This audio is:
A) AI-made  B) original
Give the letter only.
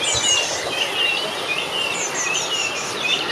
B